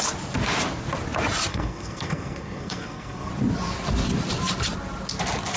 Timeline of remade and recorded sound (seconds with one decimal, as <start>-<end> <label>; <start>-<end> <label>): 0.0-1.5 recorded; 1.5-3.3 remade; 3.3-5.6 recorded